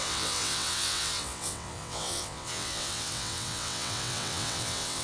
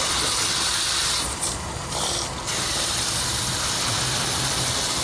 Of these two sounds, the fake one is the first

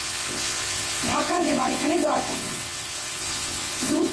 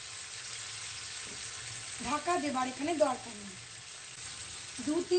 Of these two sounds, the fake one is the first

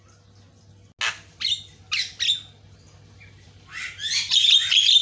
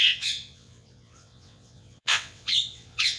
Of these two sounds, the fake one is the second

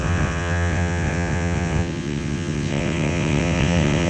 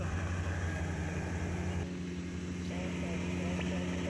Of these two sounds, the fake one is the first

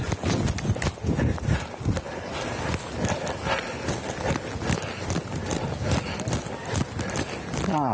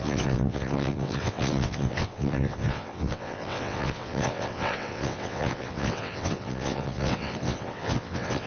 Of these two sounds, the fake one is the second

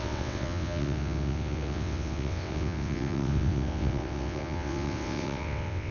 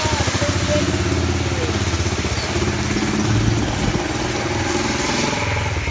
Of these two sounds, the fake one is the first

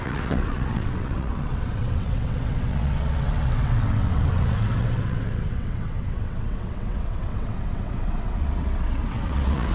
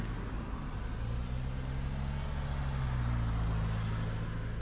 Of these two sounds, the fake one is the first